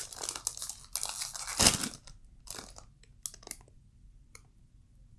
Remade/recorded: recorded